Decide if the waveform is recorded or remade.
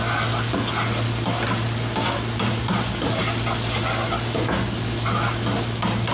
recorded